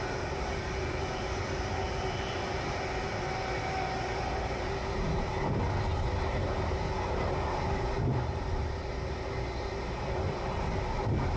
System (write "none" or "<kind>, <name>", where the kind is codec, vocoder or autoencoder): none